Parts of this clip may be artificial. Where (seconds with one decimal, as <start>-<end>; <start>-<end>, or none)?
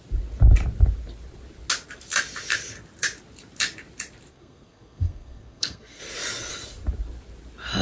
4.3-6.0